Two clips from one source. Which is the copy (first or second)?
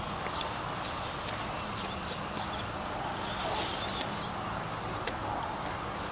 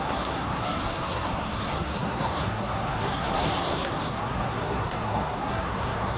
second